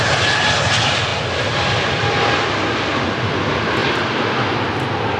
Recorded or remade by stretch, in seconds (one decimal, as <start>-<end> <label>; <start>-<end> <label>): 0.0-5.2 recorded

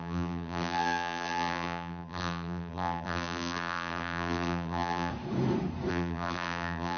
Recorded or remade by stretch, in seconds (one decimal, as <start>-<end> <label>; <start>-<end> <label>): 0.0-5.1 remade; 5.1-5.9 recorded; 5.9-7.0 remade

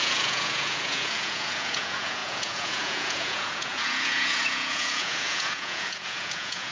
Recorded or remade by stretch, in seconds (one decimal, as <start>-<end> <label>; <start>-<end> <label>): 0.0-6.7 remade

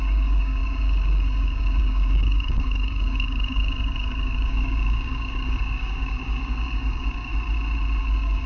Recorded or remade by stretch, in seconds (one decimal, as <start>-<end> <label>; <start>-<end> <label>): 0.0-7.3 remade; 7.3-8.0 recorded; 8.0-8.5 remade

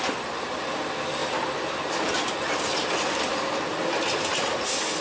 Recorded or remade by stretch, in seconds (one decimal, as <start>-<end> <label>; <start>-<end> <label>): 0.0-5.0 recorded